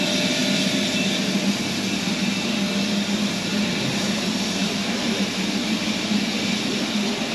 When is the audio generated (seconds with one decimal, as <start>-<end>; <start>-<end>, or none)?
4.6-5.3